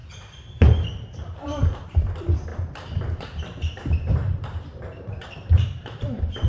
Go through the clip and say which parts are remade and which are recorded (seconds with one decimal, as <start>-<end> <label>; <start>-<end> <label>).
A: 0.0-0.8 recorded; 0.8-6.5 remade